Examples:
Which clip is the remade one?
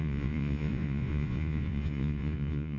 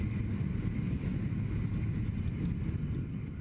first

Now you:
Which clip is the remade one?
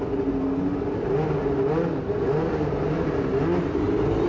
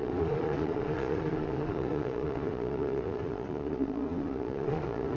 second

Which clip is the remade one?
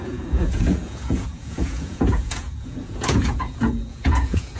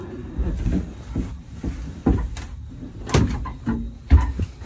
first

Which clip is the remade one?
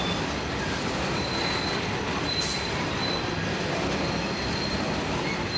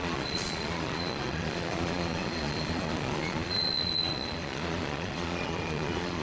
second